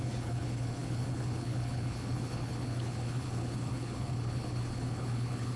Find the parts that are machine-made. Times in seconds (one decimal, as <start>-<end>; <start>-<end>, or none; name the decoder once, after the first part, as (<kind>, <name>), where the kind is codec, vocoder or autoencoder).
0.0-5.6 (codec, HILCodec)